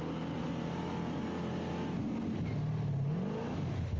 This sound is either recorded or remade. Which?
recorded